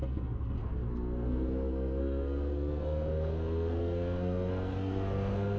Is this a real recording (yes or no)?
no